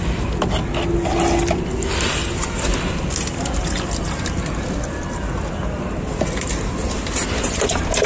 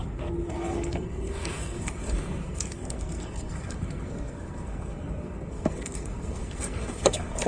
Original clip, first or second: first